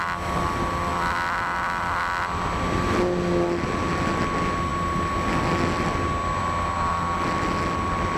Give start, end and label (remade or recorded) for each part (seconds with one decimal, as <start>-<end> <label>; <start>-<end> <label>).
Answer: 0.0-8.2 recorded